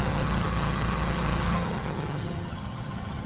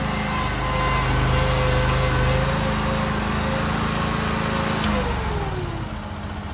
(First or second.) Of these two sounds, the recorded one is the second